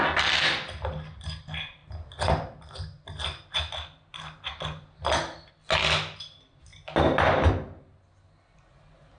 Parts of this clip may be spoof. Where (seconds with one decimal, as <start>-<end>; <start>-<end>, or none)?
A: none